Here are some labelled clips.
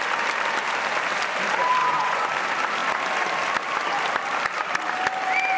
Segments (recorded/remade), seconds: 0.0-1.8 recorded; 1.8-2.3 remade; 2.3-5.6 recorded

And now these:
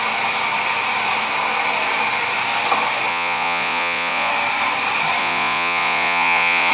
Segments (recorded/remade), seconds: 0.0-3.1 recorded; 3.1-4.3 remade; 4.3-5.2 recorded; 5.2-6.7 remade

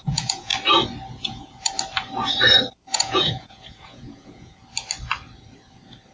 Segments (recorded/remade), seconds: 0.0-0.5 remade; 0.5-1.1 recorded; 1.1-1.7 remade; 1.7-2.9 recorded; 2.9-4.6 remade; 4.6-6.1 recorded

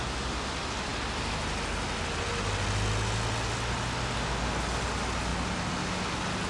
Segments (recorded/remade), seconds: 0.0-6.5 recorded

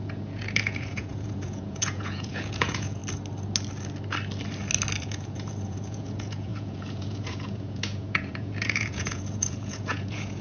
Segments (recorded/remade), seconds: 0.0-3.0 remade; 3.0-5.0 recorded; 5.0-10.4 remade

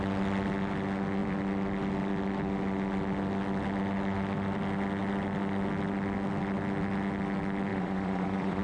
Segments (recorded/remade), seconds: 0.0-7.7 recorded; 7.7-8.6 remade